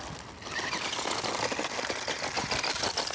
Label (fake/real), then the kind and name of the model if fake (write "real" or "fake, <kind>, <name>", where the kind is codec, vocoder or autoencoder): real